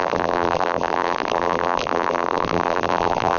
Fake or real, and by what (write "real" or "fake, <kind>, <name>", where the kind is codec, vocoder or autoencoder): fake, vocoder, BigVGAN v2